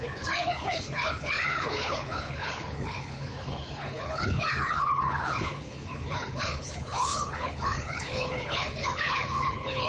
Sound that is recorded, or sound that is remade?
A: remade